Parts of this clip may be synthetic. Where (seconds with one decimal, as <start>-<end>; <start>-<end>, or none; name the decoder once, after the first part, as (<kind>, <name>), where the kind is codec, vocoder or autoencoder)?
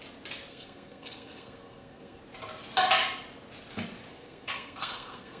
0.5-2.2 (codec, SNAC); 4.1-5.4